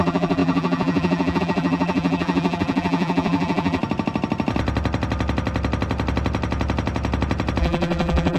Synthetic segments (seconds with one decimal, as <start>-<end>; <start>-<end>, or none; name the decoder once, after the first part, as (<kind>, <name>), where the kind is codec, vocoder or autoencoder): 0.0-3.8 (vocoder, BigVGAN v2); 7.6-8.4